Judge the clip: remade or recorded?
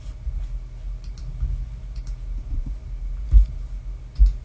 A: recorded